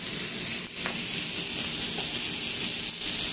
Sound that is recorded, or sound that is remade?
recorded